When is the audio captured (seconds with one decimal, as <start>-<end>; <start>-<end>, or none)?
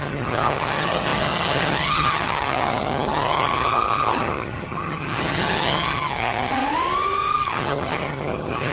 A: 6.6-7.3